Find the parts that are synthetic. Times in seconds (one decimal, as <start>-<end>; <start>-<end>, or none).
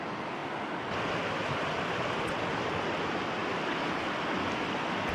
3.4-4.3